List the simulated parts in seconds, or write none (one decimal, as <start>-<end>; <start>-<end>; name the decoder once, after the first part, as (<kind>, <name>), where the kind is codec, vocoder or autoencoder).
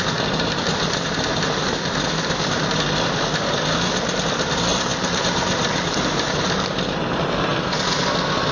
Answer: 4.7-6.0 (vocoder, BigVGAN v2)